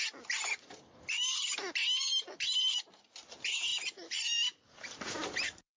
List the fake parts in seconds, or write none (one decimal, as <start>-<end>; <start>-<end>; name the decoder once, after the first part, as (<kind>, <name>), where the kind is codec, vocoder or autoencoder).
none